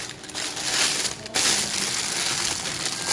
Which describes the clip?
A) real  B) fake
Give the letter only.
A